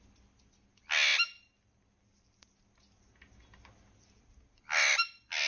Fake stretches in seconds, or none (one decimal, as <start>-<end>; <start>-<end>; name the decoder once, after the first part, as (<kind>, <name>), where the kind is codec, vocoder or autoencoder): none